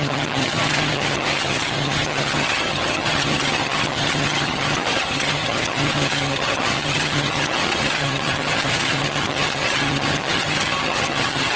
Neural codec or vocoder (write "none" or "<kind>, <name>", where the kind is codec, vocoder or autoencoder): vocoder, HiFi-GAN